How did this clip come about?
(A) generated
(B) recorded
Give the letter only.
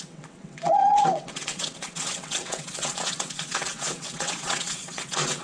A